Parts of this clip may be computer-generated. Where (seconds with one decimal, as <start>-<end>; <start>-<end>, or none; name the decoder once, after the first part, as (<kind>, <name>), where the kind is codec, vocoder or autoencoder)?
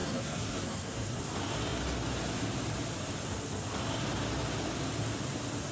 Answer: 0.0-1.2 (codec, SNAC)